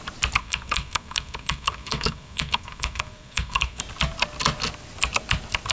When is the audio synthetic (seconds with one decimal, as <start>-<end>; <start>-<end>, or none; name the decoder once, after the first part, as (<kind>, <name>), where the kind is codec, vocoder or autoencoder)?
0.4-3.8 (codec, SNAC)